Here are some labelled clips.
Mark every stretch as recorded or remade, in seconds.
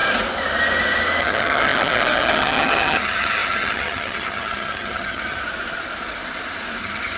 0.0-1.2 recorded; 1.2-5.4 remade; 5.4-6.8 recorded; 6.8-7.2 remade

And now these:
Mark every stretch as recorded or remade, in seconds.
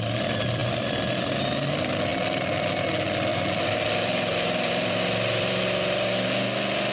0.0-3.3 recorded; 3.3-5.6 remade; 5.6-6.9 recorded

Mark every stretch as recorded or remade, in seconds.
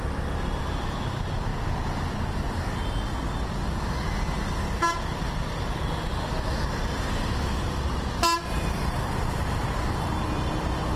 0.0-11.0 recorded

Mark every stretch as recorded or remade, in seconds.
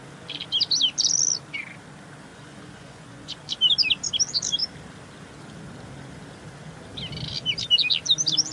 0.0-2.3 recorded; 2.3-3.4 remade; 3.4-8.5 recorded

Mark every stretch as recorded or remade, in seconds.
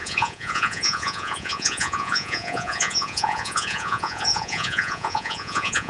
0.0-5.9 remade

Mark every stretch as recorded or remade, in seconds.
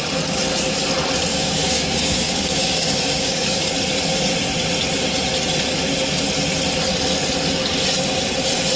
0.0-1.3 recorded; 1.3-3.7 remade; 3.7-8.8 recorded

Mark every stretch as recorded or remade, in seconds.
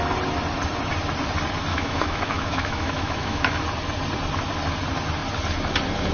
0.0-1.7 recorded; 1.7-3.6 remade; 3.6-6.1 recorded